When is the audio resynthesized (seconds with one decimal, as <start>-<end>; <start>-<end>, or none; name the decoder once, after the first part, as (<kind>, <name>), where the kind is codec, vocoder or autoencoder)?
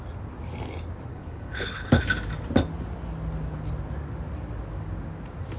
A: 1.1-2.0 (codec, HILCodec)